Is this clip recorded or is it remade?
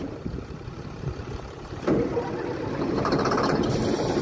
remade